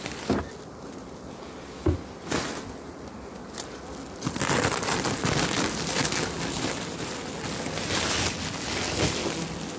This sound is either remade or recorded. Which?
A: recorded